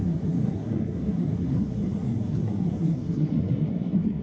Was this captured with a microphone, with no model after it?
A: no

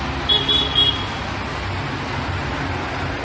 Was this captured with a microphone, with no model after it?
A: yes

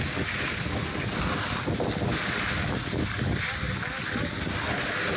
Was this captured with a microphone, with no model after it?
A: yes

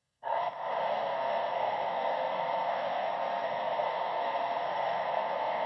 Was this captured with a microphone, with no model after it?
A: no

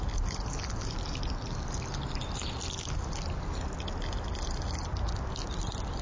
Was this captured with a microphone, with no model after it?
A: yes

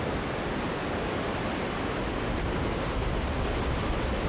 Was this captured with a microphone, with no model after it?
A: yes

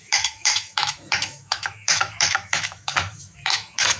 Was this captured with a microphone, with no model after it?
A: no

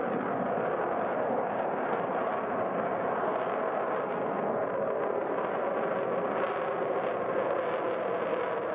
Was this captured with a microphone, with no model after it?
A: yes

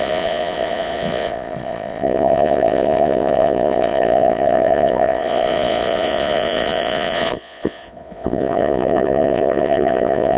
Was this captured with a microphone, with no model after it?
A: no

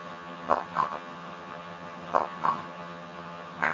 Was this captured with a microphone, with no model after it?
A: no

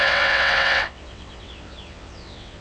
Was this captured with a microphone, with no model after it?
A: no